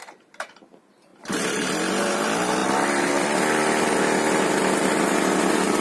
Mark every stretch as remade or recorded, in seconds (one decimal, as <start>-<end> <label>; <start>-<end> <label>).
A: 0.0-5.8 recorded